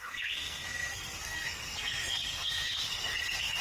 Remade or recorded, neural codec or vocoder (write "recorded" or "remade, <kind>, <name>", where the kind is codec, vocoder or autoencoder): remade, codec, SNAC